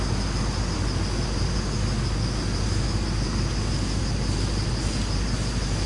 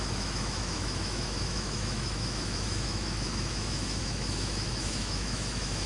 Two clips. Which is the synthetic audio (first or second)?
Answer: second